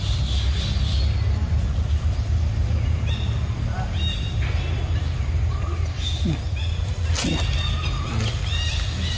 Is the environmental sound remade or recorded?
recorded